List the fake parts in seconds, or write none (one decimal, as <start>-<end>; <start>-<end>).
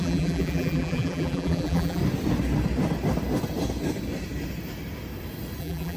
0.0-2.0; 5.6-6.0